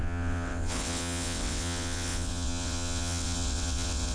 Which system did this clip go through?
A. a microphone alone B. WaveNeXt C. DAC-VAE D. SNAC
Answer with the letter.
B